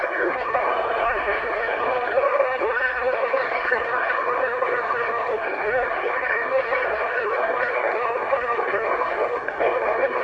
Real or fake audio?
fake